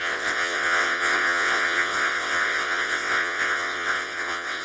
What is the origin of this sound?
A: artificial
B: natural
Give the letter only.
A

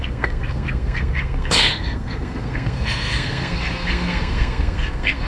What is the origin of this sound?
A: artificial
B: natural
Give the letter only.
A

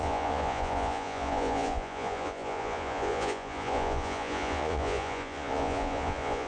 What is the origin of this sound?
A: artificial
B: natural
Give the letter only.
A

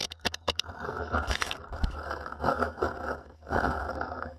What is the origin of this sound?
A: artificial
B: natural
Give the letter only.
A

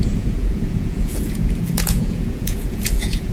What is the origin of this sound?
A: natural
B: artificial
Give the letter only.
B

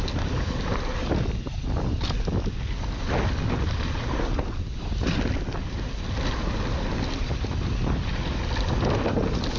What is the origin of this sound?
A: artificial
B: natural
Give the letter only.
B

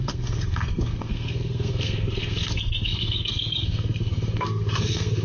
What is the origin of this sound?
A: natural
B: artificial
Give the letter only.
B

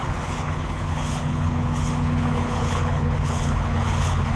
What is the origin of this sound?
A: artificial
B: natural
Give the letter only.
A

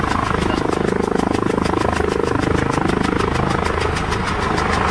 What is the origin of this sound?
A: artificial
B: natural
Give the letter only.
B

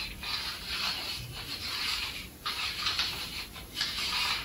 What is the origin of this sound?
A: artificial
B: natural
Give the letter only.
A